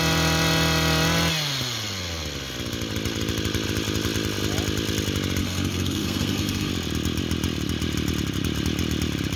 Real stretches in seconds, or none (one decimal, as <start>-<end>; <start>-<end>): 0.0-5.4; 6.7-9.4